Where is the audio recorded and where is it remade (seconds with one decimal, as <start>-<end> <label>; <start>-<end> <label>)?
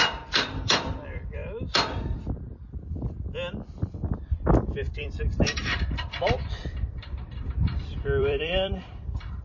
0.0-1.4 remade; 1.4-4.3 recorded; 4.3-9.4 remade